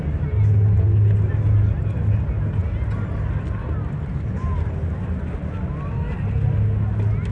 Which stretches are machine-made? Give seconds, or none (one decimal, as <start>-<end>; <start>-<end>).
none